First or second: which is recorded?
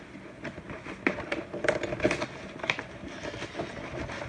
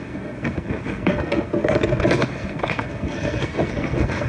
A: first